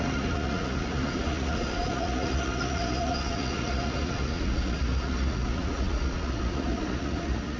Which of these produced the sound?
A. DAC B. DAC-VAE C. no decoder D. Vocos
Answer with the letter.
D